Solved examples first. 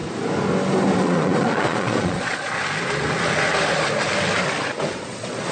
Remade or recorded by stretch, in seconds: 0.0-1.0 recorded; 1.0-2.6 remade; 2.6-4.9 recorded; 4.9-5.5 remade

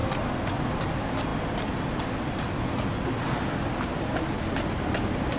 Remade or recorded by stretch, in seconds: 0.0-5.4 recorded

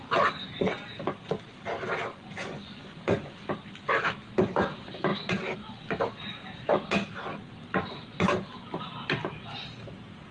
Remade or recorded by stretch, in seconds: 0.0-2.1 recorded; 2.1-3.5 remade; 3.5-10.3 recorded